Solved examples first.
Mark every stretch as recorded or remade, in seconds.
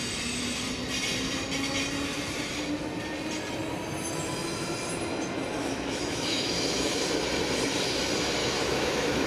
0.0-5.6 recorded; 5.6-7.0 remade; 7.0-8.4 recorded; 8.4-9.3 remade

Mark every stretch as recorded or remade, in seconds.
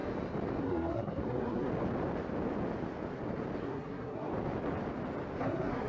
0.0-0.6 recorded; 0.6-1.7 remade; 1.7-3.6 recorded; 3.6-4.3 remade; 4.3-5.4 recorded; 5.4-5.9 remade